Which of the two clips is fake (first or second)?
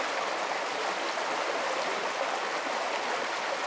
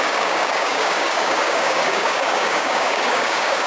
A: second